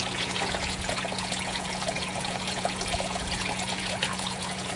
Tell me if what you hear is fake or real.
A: fake